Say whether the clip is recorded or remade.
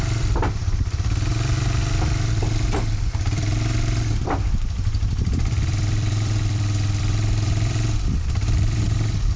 remade